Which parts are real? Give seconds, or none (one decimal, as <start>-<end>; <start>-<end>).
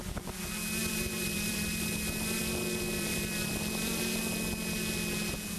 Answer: 0.0-0.8; 4.2-5.6